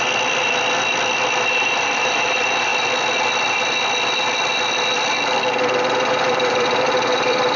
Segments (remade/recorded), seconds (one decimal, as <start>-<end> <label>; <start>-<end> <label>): 0.0-2.7 remade; 2.7-6.1 recorded; 6.1-7.6 remade